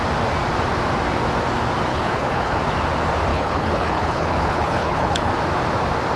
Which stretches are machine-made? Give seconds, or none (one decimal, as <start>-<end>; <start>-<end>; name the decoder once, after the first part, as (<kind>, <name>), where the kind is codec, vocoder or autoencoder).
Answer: 1.9-2.6 (codec, HILCodec); 3.3-5.3